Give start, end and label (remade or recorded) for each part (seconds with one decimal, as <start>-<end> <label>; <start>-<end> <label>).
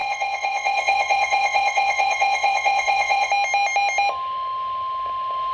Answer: 0.0-3.3 remade; 3.3-5.5 recorded